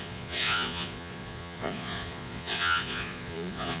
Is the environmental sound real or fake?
fake